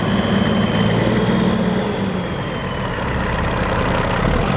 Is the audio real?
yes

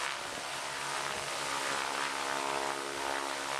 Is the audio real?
yes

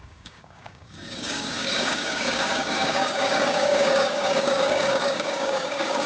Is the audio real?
no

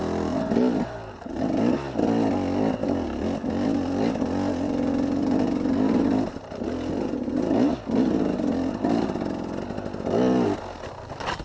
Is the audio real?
yes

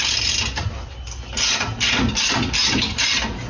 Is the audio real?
yes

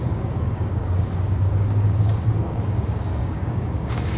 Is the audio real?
no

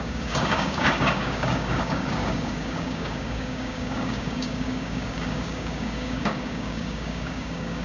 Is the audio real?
no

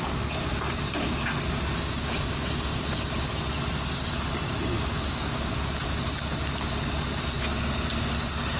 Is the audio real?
yes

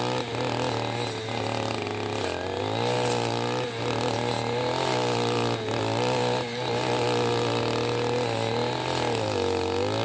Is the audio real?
yes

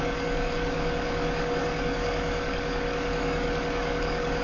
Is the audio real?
no